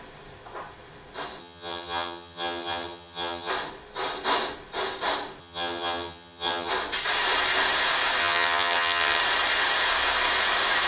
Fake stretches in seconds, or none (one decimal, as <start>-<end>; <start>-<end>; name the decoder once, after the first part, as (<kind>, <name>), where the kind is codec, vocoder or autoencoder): 1.4-3.5 (vocoder, HiFi-GAN); 5.4-6.7; 8.2-9.2